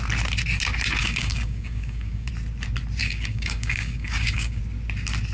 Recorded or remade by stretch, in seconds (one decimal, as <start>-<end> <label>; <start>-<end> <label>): 0.0-1.0 recorded; 1.0-2.3 remade; 2.3-3.0 recorded; 3.0-4.6 remade; 4.6-5.3 recorded